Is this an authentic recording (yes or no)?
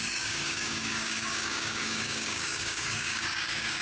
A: no